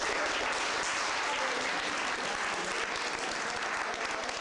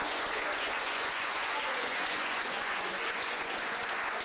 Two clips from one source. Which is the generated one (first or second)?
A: second